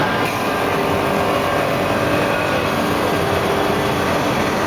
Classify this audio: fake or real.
real